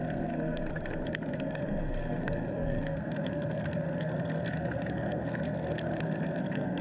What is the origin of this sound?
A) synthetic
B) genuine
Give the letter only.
A